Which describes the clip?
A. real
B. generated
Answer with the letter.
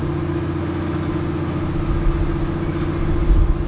A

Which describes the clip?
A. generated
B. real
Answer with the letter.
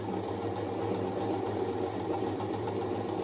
B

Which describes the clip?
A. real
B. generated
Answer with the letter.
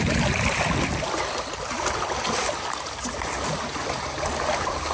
A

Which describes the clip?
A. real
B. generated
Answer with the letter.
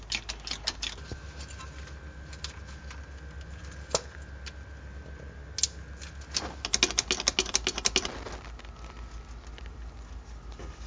A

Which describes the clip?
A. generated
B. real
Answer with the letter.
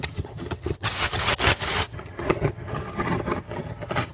A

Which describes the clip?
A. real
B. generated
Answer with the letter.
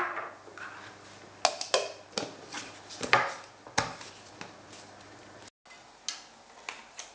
A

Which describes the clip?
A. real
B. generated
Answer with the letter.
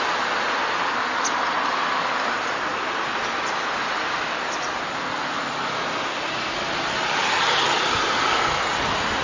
A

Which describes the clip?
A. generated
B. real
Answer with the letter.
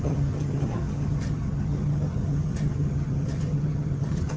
A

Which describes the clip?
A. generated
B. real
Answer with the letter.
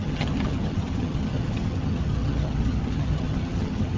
A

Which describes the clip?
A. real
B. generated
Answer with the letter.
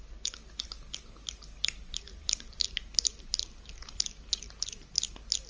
A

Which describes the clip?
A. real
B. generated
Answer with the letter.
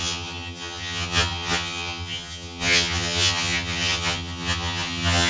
B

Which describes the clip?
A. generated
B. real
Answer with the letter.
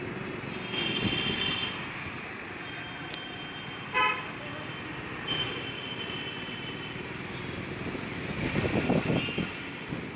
B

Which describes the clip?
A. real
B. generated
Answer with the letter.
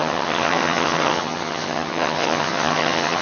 B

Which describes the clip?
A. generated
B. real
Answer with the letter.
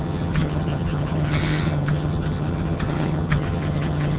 A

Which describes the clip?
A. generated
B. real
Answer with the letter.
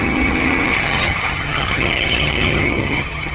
A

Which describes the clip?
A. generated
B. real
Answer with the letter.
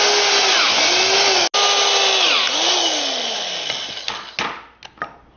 B